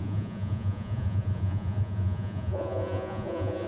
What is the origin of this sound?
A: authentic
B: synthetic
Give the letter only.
B